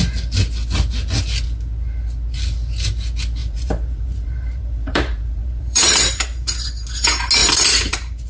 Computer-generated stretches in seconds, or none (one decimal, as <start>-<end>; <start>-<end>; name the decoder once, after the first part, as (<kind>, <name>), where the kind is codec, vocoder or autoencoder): 3.4-6.7 (vocoder, BigVGAN v2); 7.4-8.3